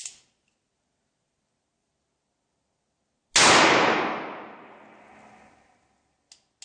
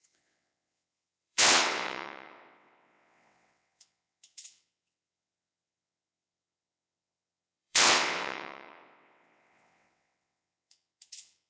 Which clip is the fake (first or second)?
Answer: second